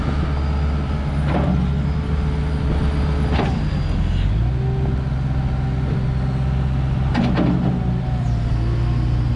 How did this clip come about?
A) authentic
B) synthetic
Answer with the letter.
A